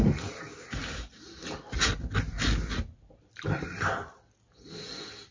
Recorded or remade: recorded